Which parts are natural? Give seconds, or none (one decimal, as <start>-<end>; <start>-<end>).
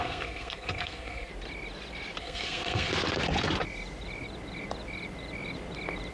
1.3-2.2; 2.9-6.1